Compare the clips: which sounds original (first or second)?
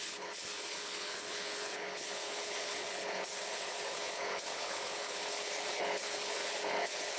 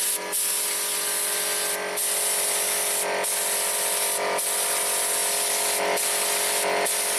second